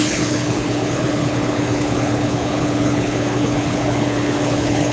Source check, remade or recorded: remade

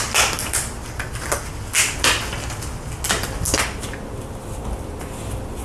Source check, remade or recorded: recorded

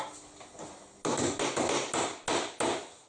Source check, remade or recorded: recorded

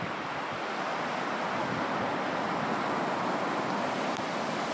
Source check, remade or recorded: recorded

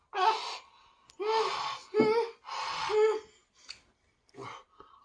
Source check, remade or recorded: recorded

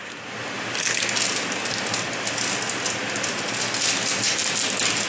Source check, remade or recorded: recorded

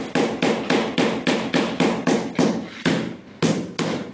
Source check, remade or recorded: recorded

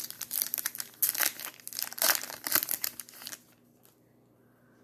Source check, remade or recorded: recorded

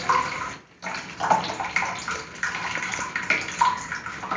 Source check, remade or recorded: recorded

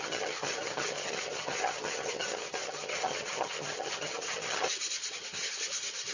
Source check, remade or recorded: remade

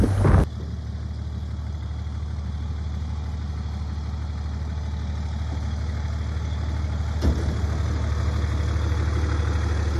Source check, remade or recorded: recorded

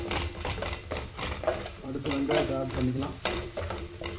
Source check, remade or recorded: remade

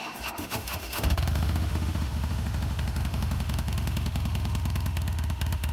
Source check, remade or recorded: remade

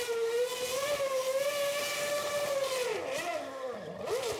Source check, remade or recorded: recorded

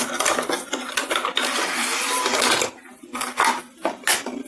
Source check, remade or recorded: recorded